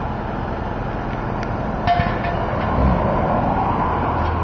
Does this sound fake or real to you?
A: real